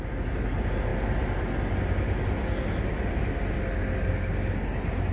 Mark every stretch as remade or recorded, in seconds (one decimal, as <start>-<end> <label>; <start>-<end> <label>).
0.0-5.1 recorded